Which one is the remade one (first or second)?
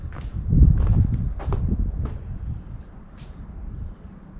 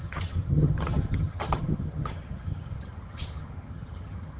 second